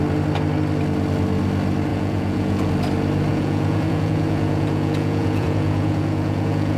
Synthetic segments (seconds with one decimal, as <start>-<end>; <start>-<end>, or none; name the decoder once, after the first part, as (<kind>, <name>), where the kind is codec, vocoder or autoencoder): 1.9-2.7 (vocoder, Vocos); 3.3-6.8